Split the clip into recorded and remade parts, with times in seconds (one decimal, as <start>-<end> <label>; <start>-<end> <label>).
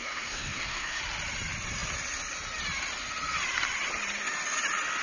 0.0-1.0 remade; 1.0-5.0 recorded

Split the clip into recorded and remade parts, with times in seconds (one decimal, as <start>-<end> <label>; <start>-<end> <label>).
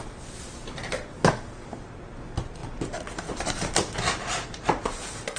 0.0-2.6 recorded; 2.6-3.3 remade; 3.3-5.4 recorded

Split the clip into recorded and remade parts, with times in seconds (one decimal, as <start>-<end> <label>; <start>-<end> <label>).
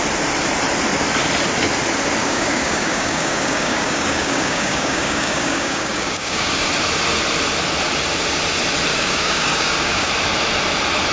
0.0-2.2 recorded; 2.2-6.7 remade; 6.7-8.9 recorded; 8.9-10.1 remade; 10.1-11.1 recorded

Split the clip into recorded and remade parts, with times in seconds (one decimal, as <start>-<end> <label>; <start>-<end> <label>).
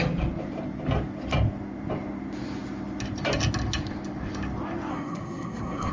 0.0-4.9 recorded; 4.9-5.9 remade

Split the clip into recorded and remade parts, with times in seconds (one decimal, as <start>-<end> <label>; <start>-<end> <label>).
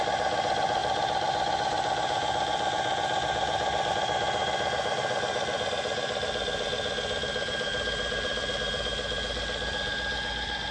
0.0-10.7 remade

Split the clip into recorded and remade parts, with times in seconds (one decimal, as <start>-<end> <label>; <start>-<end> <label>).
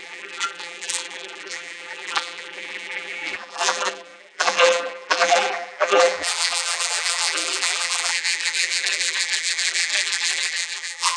0.0-11.2 remade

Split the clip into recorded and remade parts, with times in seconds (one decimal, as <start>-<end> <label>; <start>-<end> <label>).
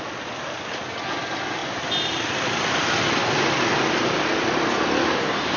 0.0-5.6 recorded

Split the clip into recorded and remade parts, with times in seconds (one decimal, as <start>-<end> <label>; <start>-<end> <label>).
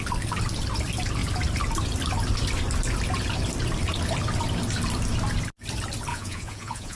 0.0-6.1 recorded; 6.1-7.0 remade